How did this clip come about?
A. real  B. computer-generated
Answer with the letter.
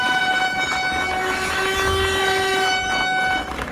B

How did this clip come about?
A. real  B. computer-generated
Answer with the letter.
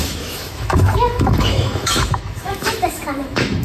B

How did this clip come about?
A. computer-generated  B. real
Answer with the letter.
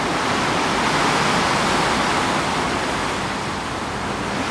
B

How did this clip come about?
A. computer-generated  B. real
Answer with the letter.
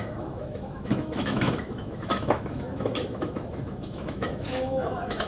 A